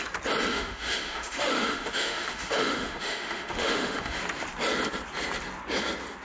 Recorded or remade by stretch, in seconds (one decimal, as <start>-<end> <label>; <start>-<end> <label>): 0.0-0.5 recorded; 0.5-4.2 remade; 4.2-6.2 recorded